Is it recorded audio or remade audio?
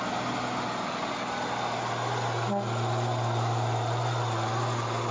recorded